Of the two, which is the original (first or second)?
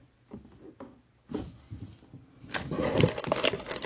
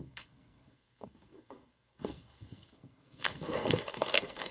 first